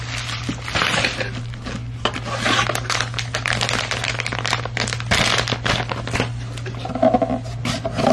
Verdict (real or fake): fake